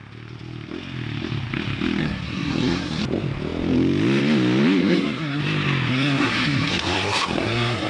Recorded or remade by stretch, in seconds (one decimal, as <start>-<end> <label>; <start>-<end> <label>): 0.0-2.0 recorded; 2.0-3.0 remade; 3.0-4.8 recorded; 4.8-5.4 remade; 5.4-5.9 recorded; 5.9-7.9 remade